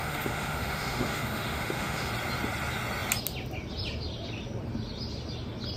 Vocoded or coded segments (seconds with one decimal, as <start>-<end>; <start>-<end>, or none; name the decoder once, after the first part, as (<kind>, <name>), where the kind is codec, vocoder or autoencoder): 0.0-2.1 (autoencoder, DAC-VAE)